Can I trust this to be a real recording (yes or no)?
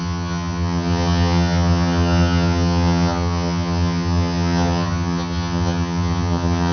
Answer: no